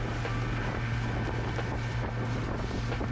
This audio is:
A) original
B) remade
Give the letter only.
A